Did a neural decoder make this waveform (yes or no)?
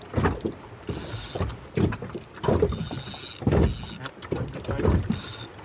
no